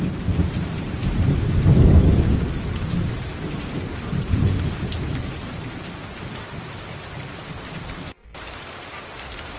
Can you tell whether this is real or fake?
fake